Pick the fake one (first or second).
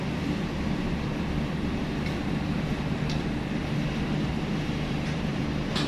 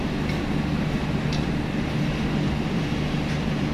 first